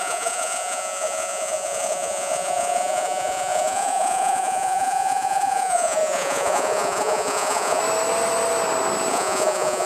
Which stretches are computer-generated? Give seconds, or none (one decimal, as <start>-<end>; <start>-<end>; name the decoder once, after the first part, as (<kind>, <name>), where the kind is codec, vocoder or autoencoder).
0.0-7.8 (vocoder, Vocos); 9.1-9.9